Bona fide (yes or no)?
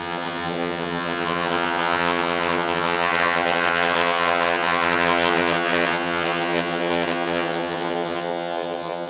no